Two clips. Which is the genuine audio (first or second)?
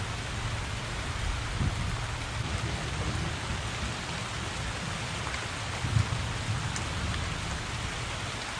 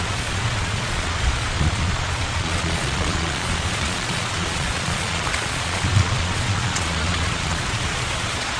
first